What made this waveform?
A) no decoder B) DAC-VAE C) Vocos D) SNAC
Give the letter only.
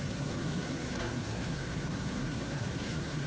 D